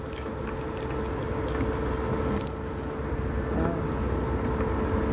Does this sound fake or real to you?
real